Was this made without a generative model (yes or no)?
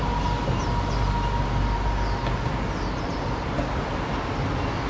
yes